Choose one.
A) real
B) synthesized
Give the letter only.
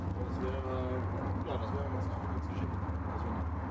A